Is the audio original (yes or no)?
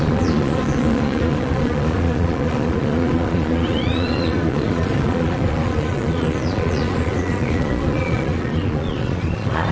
no